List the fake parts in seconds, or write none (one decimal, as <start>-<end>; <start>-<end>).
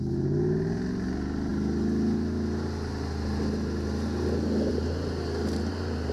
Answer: none